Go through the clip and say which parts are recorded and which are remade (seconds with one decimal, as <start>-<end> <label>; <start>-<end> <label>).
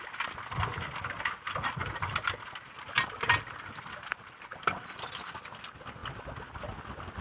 0.0-7.2 recorded